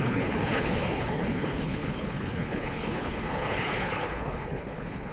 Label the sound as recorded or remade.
remade